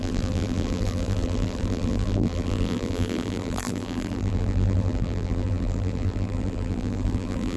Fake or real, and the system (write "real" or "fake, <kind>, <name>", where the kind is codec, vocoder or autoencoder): fake, vocoder, BigVGAN v2